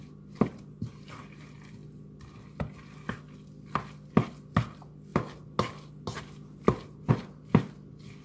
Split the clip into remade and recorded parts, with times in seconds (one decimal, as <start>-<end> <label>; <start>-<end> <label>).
0.0-8.2 recorded